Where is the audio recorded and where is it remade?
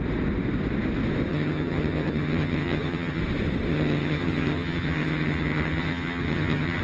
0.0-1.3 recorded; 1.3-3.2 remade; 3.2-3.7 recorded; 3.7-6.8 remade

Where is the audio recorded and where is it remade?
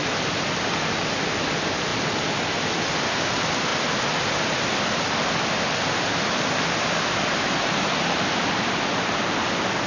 0.0-9.9 recorded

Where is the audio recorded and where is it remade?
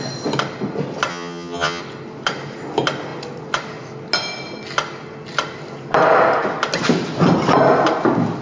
0.0-1.1 recorded; 1.1-1.8 remade; 1.8-8.4 recorded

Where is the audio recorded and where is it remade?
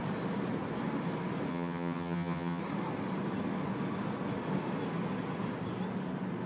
0.0-1.5 recorded; 1.5-2.6 remade; 2.6-6.5 recorded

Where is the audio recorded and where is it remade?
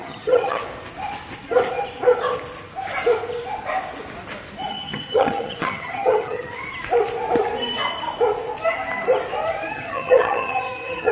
0.0-0.6 remade; 0.6-4.7 recorded; 4.7-6.6 remade; 6.6-9.7 recorded; 9.7-11.1 remade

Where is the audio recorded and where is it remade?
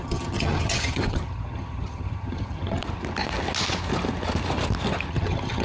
0.0-2.8 remade; 2.8-5.1 recorded; 5.1-5.6 remade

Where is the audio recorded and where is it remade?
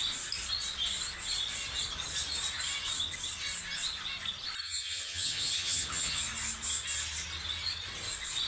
0.0-4.6 recorded; 4.6-6.2 remade; 6.2-8.5 recorded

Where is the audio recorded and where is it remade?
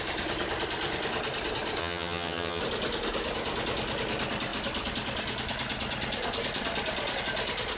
0.0-1.8 recorded; 1.8-2.6 remade; 2.6-7.8 recorded